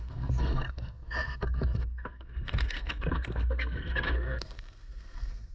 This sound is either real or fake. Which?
fake